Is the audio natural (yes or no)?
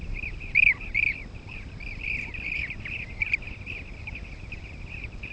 yes